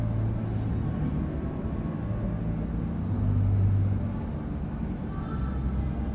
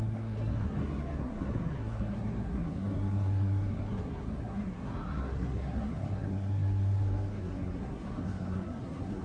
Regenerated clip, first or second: second